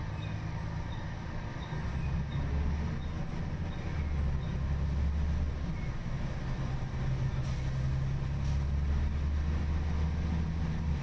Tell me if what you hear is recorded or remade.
recorded